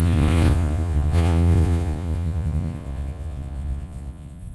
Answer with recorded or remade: remade